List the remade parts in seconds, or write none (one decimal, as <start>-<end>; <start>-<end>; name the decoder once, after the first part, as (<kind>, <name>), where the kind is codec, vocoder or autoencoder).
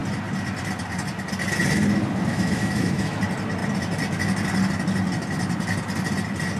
2.3-3.2 (autoencoder, DAC-VAE)